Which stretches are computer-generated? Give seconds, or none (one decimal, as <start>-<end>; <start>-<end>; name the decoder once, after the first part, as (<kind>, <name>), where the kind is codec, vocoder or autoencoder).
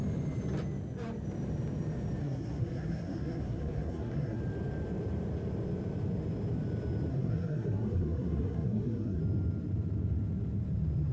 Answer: 2.2-4.4 (codec, SNAC); 7.1-9.2